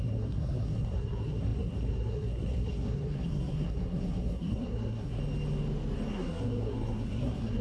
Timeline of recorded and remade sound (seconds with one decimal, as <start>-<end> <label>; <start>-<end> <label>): 0.0-5.2 remade; 5.2-6.1 recorded; 6.1-7.6 remade